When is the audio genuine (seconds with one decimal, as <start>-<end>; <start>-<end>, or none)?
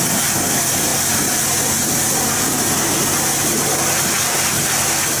0.0-5.2